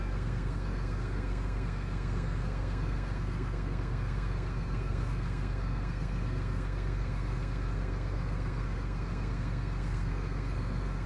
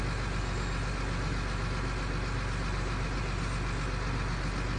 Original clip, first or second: second